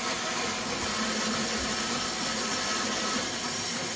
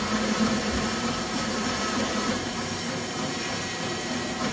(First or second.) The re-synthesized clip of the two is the second